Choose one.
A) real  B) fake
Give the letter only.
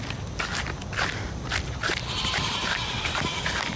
A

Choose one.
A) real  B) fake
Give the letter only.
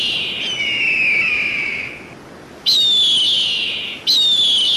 A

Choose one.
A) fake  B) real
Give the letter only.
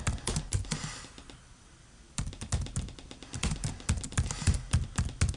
B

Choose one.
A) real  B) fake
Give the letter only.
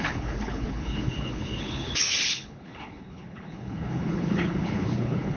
B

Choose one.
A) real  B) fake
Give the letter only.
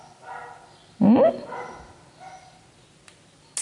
A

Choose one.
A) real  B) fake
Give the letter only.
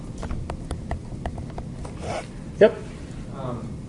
A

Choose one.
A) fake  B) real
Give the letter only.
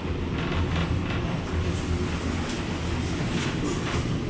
B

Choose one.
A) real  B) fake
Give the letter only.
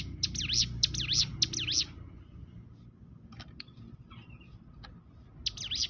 A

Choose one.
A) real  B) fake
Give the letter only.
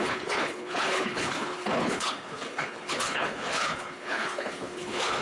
B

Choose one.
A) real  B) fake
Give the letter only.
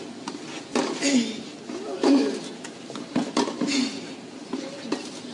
A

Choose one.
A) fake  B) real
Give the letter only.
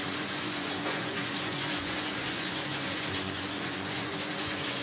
A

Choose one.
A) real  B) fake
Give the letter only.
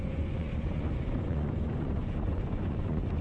B